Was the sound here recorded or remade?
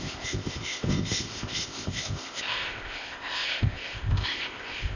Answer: remade